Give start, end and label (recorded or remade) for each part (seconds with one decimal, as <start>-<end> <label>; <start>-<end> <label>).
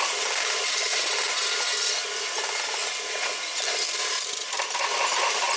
0.0-0.9 remade; 0.9-4.3 recorded; 4.3-5.6 remade